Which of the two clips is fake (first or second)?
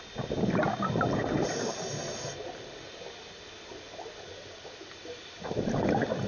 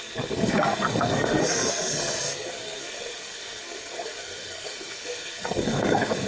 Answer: second